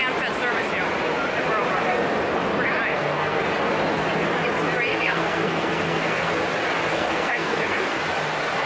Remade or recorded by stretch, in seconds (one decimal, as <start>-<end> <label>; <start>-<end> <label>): 0.0-2.9 recorded; 2.9-3.4 remade; 3.4-4.9 recorded; 4.9-6.3 remade; 6.3-6.9 recorded; 6.9-8.0 remade; 8.0-8.7 recorded